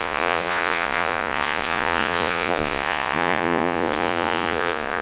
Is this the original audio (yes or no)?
no